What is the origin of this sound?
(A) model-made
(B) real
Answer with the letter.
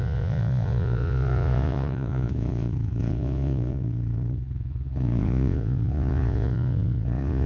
A